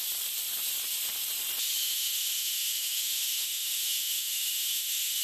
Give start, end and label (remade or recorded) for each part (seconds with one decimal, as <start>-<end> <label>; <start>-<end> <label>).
0.0-1.8 recorded; 1.8-5.2 remade